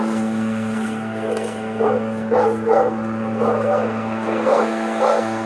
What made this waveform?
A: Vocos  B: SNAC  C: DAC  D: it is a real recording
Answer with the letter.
B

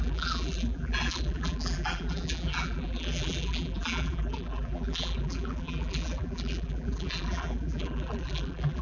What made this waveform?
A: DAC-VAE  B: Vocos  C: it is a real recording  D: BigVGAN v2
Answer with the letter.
D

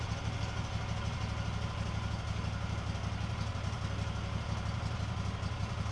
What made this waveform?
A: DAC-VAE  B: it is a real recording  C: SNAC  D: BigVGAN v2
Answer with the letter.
B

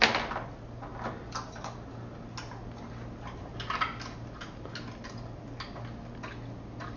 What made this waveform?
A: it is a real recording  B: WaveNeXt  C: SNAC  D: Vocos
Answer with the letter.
A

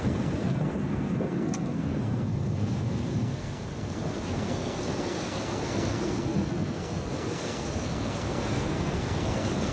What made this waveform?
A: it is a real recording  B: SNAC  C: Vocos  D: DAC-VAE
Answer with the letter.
B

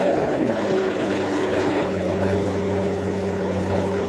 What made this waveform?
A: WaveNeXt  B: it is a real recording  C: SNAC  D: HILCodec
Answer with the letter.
D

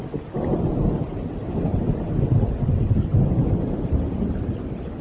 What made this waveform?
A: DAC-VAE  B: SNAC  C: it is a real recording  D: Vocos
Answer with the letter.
C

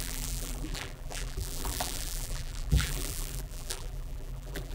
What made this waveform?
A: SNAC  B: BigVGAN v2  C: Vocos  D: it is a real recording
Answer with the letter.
B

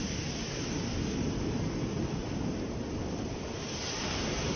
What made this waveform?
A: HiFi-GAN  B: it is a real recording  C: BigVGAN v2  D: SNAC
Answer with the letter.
B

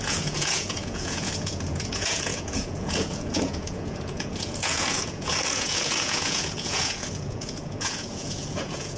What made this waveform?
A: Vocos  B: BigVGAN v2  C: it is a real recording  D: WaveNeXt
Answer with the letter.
A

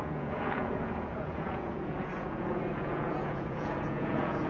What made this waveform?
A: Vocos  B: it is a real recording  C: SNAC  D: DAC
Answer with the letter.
A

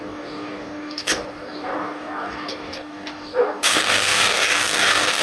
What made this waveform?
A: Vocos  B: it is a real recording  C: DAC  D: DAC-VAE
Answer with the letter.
C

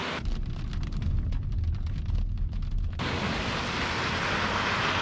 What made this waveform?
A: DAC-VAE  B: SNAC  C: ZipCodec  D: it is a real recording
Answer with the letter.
D